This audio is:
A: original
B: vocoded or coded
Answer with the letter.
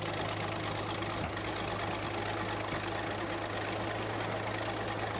A